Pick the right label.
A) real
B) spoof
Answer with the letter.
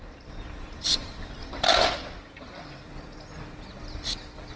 A